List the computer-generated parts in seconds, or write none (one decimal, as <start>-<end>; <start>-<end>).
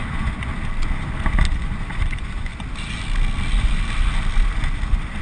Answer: 0.0-0.5; 1.6-2.5